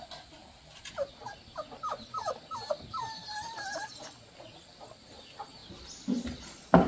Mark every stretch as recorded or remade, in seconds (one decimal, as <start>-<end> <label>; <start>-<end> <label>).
0.0-0.4 recorded; 0.4-1.3 remade; 1.3-5.6 recorded; 5.6-6.4 remade; 6.4-6.9 recorded